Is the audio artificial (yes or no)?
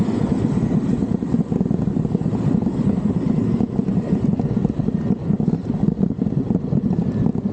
no